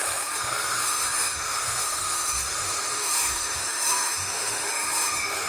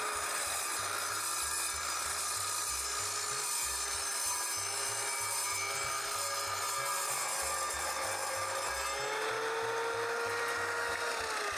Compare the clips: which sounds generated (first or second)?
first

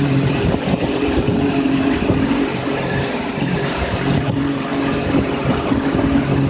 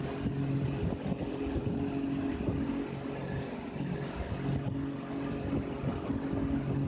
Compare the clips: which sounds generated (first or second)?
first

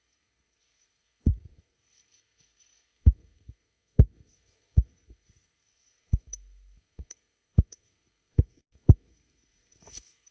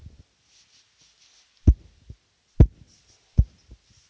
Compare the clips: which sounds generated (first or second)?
first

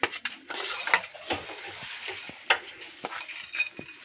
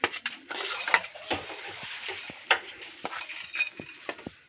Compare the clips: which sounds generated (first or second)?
second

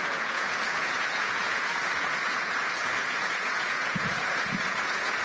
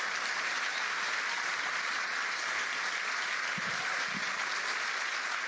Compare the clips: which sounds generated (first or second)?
first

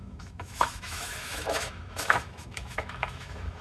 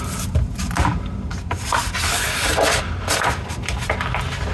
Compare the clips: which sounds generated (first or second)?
first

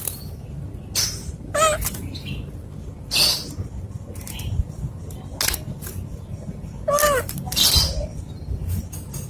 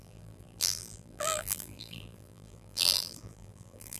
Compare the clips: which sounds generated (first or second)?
second